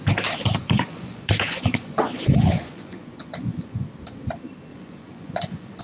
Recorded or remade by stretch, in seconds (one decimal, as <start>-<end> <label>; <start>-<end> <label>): 0.0-0.6 recorded; 0.6-3.9 remade; 3.9-4.7 recorded; 4.7-5.8 remade